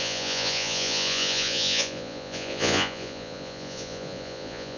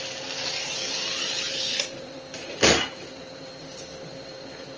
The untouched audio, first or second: second